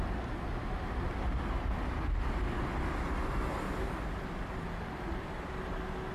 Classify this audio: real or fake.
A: real